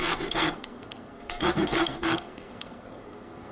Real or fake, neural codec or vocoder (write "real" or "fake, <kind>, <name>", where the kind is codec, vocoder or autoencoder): fake, codec, SNAC